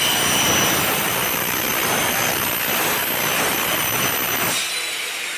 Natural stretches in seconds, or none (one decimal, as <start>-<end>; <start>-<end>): 1.7-4.9